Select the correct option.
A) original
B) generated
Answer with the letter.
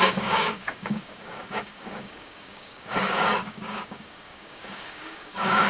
B